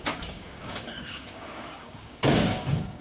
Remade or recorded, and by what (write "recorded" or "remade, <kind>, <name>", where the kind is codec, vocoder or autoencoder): remade, codec, DAC